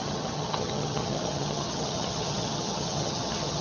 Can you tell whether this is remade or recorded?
remade